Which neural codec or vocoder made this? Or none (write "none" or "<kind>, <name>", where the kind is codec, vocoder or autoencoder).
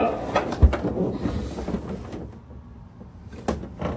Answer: none